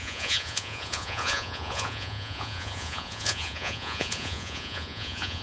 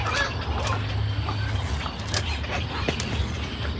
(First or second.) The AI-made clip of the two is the first